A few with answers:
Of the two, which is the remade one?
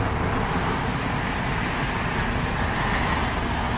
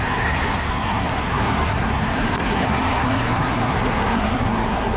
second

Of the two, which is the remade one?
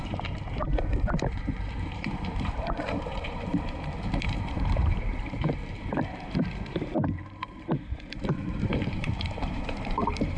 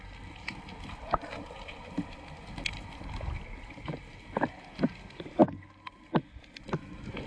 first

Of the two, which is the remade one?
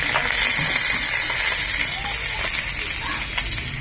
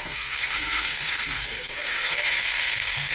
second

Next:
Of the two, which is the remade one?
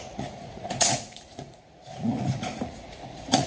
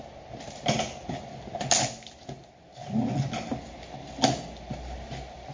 first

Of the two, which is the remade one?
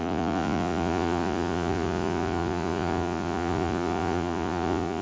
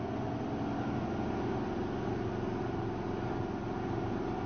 first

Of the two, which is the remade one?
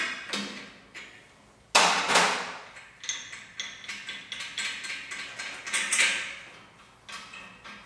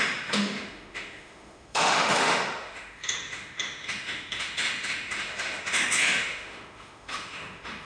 second